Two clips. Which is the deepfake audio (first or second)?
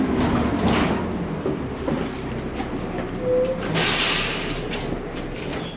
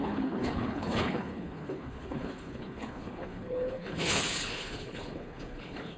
second